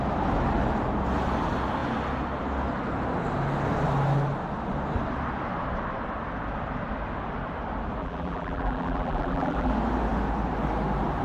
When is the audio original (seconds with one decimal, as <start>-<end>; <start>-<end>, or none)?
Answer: 0.0-8.0; 9.7-11.2